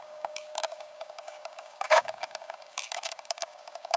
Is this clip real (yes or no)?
no